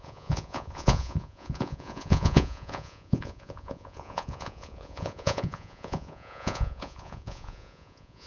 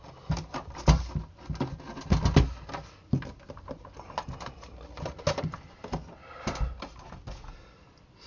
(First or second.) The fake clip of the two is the first